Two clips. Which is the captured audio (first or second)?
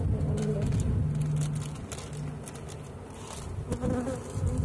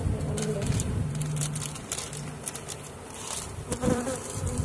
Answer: first